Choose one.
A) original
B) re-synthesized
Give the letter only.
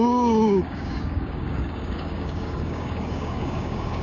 B